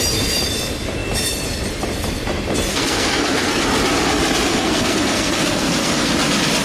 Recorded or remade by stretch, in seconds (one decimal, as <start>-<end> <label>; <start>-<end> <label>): 0.0-2.7 recorded; 2.7-3.6 remade; 3.6-4.5 recorded; 4.5-6.1 remade; 6.1-6.6 recorded